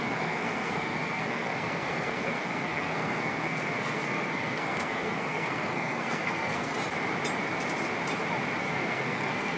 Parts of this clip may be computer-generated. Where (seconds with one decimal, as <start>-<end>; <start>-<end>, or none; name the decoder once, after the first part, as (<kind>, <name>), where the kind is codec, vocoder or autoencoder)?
0.0-6.7 (codec, SNAC); 8.6-9.6